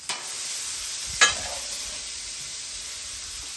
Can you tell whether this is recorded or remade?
recorded